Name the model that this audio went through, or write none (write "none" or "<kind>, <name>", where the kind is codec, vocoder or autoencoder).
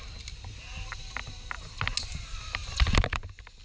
none